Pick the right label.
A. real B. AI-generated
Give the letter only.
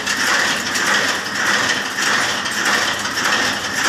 A